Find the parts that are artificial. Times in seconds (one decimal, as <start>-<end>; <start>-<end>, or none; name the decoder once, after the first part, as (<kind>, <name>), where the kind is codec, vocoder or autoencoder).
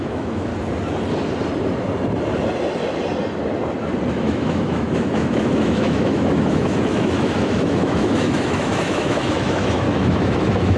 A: 0.0-0.5 (autoencoder, DAC-VAE); 4.1-10.8